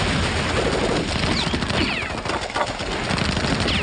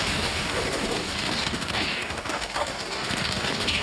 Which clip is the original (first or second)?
first